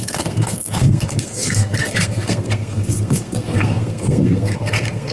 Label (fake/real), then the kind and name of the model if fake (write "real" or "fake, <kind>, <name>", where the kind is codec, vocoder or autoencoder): fake, codec, SNAC